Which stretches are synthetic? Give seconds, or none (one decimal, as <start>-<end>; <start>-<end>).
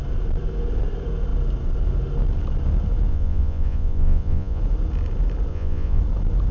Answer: 3.1-4.6; 5.5-6.0